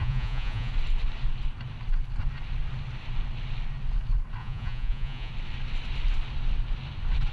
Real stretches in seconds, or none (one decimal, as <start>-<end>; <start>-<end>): 0.7-4.4; 5.3-7.3